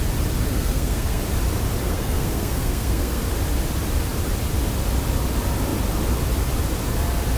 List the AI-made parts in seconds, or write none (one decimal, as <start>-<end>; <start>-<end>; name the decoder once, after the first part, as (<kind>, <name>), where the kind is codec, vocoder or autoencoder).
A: 0.5-1.2 (codec, SNAC); 1.8-3.2